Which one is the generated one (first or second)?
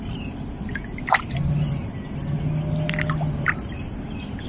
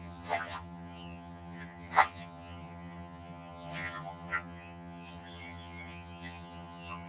second